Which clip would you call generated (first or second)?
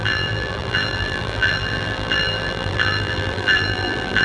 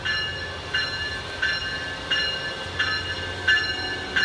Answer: first